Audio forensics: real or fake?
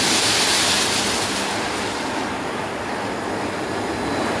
real